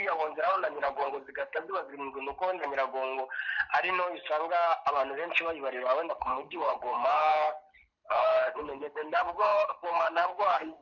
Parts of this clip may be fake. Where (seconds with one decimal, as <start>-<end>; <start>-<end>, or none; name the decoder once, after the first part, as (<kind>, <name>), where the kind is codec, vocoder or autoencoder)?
0.0-1.9 (codec, HILCodec); 6.1-10.8